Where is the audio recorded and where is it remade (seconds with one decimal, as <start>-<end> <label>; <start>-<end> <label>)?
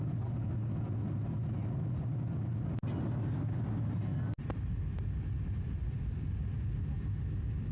0.0-7.7 recorded